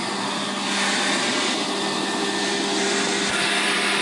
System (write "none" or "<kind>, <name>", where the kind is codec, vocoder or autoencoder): none